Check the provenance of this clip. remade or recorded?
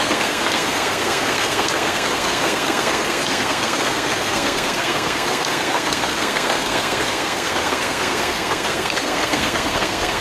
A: remade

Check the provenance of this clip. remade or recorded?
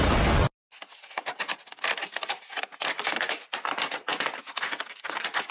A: recorded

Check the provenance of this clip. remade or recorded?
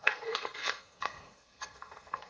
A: remade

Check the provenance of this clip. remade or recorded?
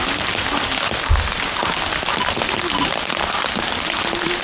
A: recorded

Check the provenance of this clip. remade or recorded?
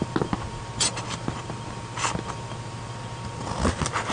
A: recorded